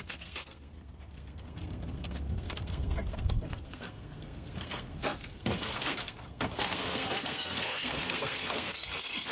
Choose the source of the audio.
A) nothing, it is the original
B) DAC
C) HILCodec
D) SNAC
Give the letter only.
D